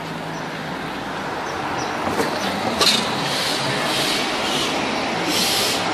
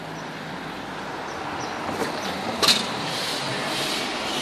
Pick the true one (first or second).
first